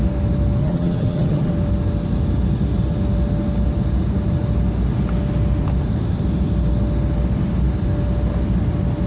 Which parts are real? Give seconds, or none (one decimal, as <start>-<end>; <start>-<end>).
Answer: 0.0-0.6; 1.5-9.1

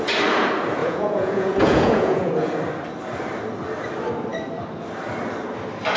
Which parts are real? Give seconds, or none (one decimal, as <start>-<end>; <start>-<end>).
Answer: 0.0-0.8; 2.3-6.0

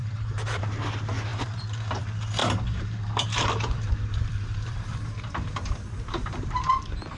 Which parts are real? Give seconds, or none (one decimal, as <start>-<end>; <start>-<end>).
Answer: 0.7-1.3; 2.0-2.4; 6.7-7.2

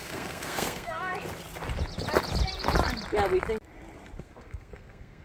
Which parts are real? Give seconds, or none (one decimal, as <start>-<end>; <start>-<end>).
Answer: 1.1-4.2

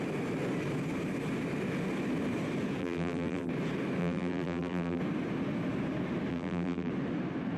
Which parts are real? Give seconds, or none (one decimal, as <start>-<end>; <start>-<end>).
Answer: 0.0-2.8; 3.5-4.0; 5.0-6.3; 6.9-7.6

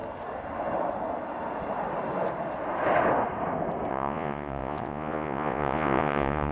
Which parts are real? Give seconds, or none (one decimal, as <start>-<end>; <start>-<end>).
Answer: 0.0-3.9